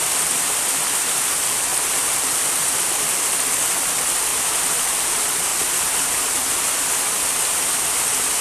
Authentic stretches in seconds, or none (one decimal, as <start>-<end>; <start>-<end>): 0.0-1.7; 3.1-4.3; 5.0-5.5; 6.4-8.4